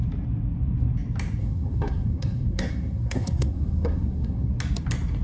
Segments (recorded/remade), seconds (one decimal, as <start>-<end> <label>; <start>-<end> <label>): 0.0-1.4 recorded; 1.4-4.5 remade; 4.5-5.2 recorded